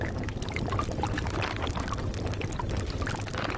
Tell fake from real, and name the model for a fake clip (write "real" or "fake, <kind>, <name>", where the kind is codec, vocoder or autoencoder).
real